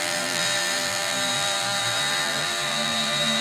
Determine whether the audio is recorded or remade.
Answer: remade